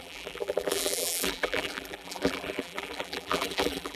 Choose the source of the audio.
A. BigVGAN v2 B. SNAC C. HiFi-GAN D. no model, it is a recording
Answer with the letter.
A